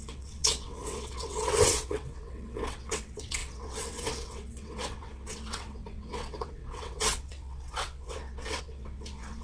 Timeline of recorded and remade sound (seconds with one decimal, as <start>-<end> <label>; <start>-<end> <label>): 0.0-9.4 remade